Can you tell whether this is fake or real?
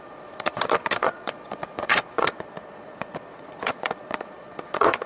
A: fake